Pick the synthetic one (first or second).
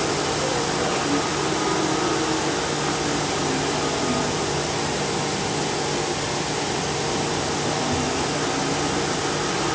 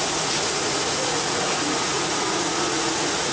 second